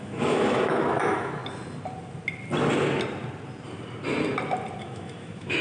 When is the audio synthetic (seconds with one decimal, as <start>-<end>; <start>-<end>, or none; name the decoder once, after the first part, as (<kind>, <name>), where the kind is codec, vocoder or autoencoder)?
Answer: 0.0-1.4 (autoencoder, DAC-VAE); 4.8-5.6